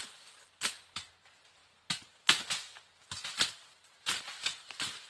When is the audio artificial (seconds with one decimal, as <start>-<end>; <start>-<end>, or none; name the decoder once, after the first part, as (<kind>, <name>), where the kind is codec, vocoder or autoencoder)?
none